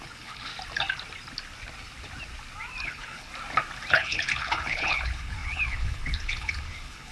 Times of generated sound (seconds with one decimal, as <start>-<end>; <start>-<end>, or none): 0.0-0.5; 2.8-3.3; 3.9-7.1